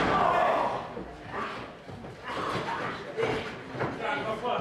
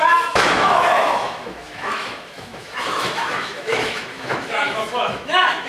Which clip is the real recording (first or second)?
first